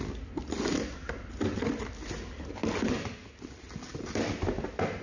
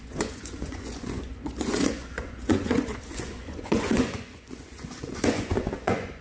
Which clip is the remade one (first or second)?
second